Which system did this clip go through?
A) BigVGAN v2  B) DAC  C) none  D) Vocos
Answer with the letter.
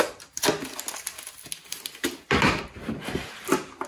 C